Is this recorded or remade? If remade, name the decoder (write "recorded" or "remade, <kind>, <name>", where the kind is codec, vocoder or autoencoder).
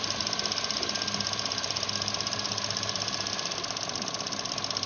recorded